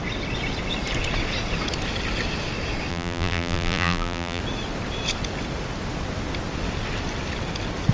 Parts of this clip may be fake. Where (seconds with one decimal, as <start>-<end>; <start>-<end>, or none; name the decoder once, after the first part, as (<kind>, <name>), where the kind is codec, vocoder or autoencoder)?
2.9-4.4 (vocoder, BigVGAN v2)